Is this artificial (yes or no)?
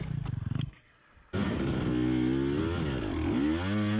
no